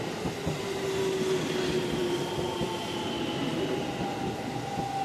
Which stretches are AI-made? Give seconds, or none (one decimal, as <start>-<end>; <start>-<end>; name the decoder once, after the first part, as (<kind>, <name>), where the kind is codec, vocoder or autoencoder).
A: none